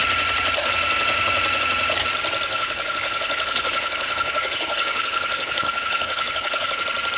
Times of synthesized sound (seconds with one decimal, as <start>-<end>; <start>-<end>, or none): 2.5-6.8